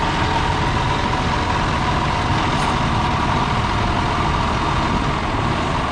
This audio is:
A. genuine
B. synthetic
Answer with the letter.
A